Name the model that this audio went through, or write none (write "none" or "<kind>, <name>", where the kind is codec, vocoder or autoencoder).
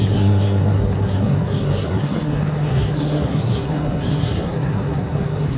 codec, SNAC